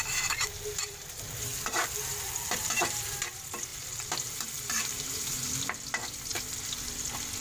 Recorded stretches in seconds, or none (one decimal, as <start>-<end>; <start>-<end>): 0.0-0.7; 3.1-3.7; 5.5-7.4